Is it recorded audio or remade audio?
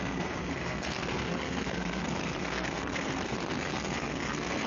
remade